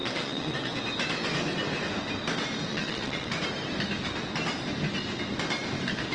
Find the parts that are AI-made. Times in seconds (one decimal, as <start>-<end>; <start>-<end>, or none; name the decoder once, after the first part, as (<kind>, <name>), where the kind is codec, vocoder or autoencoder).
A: 0.0-0.7 (vocoder, WaveNeXt); 2.7-3.3